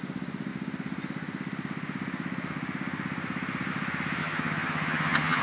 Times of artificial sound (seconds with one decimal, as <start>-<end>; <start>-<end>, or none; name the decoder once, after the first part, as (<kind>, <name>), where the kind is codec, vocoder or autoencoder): 4.2-5.4 (vocoder, HiFi-GAN)